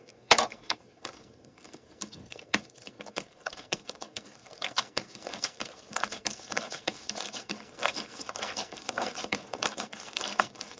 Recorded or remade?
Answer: remade